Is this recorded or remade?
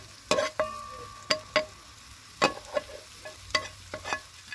recorded